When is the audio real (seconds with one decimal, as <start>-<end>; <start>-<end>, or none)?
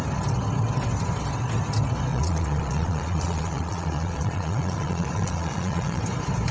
0.0-2.1; 6.0-6.5